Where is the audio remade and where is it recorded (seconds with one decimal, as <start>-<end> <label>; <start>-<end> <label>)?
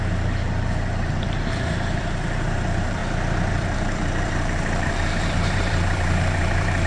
0.0-3.0 remade; 3.0-3.5 recorded; 3.5-6.9 remade